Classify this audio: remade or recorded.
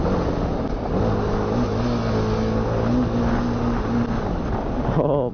recorded